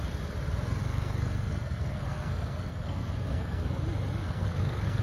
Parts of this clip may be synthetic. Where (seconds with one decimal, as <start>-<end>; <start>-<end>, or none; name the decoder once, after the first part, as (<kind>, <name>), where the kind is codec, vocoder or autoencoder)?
0.8-3.8 (codec, SNAC); 4.2-5.0